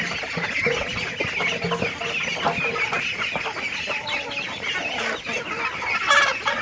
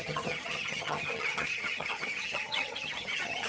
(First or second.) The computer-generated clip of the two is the second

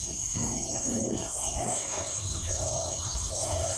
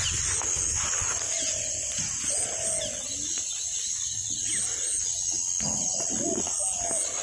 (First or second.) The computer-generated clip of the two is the first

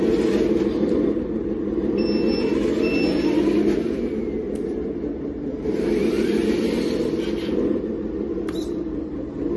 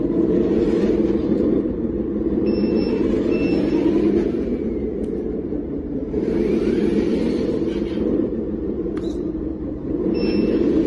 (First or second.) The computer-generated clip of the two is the second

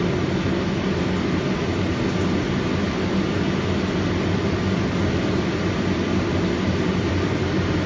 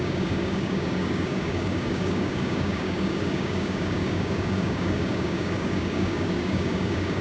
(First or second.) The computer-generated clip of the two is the second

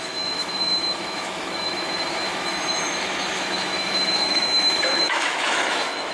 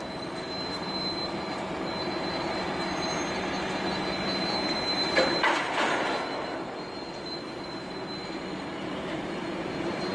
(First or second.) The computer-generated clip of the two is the first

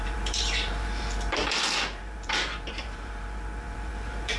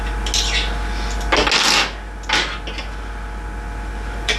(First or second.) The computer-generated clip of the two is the first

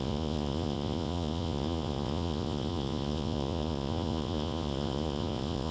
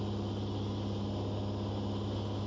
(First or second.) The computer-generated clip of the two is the first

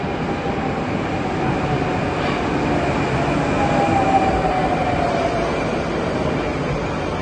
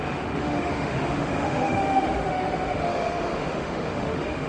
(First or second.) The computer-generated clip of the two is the second